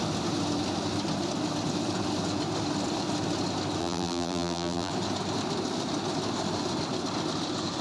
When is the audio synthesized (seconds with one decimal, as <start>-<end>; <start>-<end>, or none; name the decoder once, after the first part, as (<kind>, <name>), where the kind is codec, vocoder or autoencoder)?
3.8-4.9 (vocoder, BigVGAN v2)